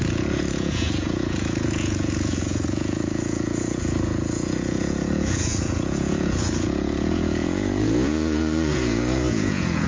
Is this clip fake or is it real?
fake